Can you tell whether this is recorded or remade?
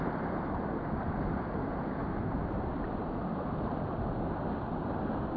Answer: recorded